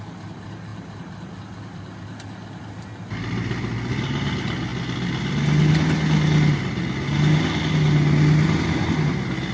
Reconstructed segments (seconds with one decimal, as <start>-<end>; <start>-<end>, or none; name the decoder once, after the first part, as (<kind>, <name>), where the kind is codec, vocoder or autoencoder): none